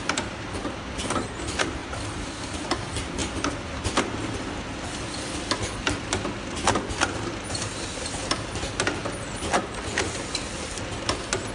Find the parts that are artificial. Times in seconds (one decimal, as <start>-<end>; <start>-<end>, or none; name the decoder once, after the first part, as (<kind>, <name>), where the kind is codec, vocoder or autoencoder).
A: 1.8-2.4 (vocoder, BigVGAN v2)